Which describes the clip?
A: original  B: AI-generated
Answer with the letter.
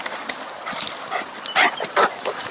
A